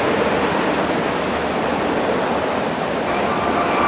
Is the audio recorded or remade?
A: recorded